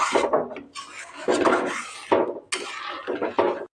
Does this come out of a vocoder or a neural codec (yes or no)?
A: no